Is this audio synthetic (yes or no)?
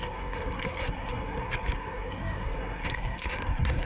yes